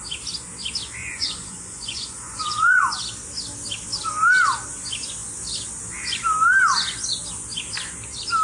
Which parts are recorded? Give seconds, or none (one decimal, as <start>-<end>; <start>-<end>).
0.0-1.0; 2.8-8.4